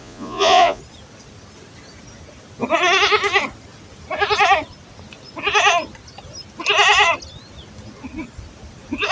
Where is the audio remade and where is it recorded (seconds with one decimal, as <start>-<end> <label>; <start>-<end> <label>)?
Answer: 0.0-0.8 remade; 0.8-9.1 recorded

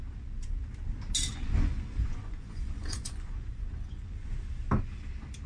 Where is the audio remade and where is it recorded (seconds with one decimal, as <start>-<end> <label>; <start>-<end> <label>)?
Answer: 0.0-1.3 recorded; 1.3-4.3 remade; 4.3-5.5 recorded

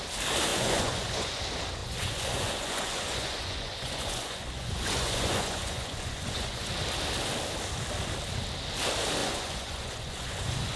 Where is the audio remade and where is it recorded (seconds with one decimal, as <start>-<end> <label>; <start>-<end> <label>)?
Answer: 0.0-0.5 recorded; 0.5-1.4 remade; 1.4-1.8 recorded; 1.8-6.7 remade; 6.7-9.2 recorded; 9.2-10.8 remade